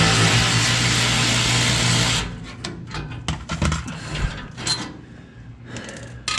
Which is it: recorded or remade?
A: recorded